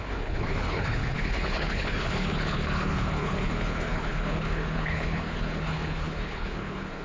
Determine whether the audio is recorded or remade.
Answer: remade